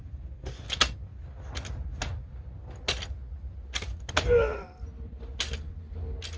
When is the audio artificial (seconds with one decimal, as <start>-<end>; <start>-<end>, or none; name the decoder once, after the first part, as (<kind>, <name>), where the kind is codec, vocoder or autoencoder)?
none